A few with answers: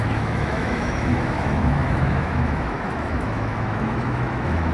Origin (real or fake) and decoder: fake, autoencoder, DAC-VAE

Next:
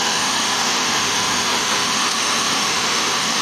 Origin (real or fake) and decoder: fake, autoencoder, DAC-VAE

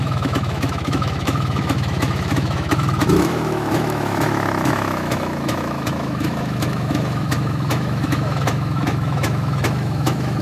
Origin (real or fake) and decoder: fake, autoencoder, DAC-VAE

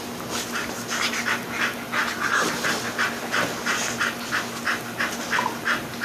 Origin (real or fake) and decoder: real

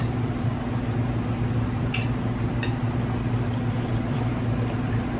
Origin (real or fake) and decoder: real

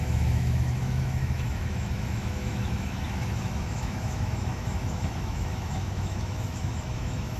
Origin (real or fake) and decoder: fake, autoencoder, DAC-VAE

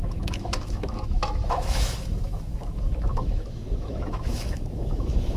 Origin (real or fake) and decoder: fake, autoencoder, DAC-VAE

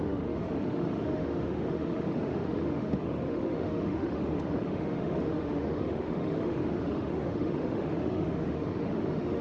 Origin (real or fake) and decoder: fake, autoencoder, DAC-VAE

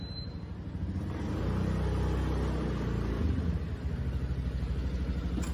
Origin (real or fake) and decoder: real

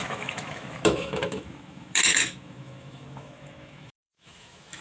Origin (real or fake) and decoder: fake, autoencoder, DAC-VAE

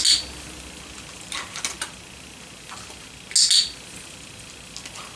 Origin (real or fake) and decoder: real